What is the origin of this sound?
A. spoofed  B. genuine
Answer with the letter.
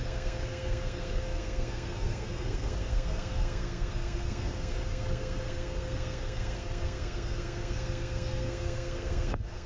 A